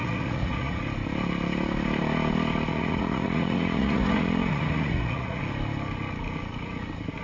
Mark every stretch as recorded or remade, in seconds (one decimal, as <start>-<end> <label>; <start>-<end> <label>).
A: 0.0-0.8 remade; 0.8-2.7 recorded; 2.7-5.4 remade; 5.4-7.2 recorded

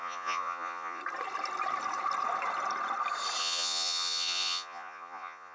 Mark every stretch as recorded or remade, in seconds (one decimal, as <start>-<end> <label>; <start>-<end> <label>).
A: 0.0-1.0 remade; 1.0-3.4 recorded; 3.4-5.5 remade

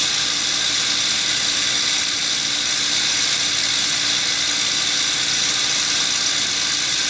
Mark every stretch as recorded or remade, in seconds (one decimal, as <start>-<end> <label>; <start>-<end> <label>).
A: 0.0-7.1 recorded

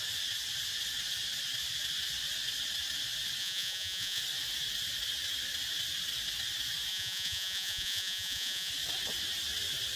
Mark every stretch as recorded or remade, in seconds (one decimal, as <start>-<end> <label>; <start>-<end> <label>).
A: 0.0-3.4 recorded; 3.4-4.2 remade; 4.2-6.9 recorded; 6.9-8.7 remade; 8.7-10.0 recorded

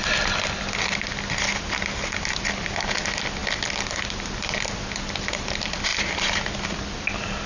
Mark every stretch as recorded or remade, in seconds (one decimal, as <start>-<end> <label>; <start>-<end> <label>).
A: 0.0-7.5 recorded

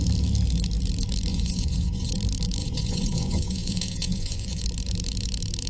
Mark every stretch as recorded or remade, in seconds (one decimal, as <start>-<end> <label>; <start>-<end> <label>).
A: 0.0-1.3 recorded; 1.3-2.1 remade; 2.1-2.6 recorded; 2.6-4.6 remade; 4.6-5.7 recorded

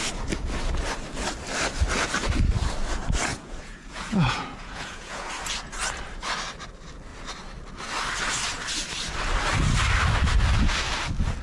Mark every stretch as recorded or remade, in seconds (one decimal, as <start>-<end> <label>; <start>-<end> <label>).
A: 0.0-3.3 recorded; 3.3-5.3 remade; 5.3-11.4 recorded

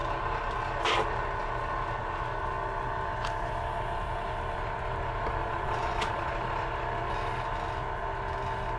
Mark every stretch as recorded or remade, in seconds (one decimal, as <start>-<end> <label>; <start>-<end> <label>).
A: 0.0-5.4 recorded; 5.4-6.3 remade; 6.3-8.8 recorded